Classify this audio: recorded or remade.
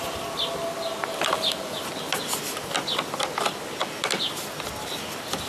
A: recorded